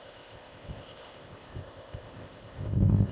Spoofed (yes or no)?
yes